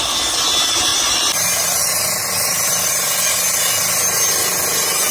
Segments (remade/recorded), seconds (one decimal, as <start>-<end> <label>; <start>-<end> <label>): 0.0-5.1 recorded